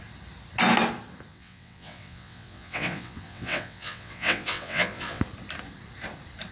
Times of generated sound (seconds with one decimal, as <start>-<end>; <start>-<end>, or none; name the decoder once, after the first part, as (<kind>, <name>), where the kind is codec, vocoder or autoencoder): 1.3-5.2 (vocoder, WaveNeXt)